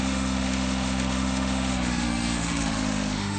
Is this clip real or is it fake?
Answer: fake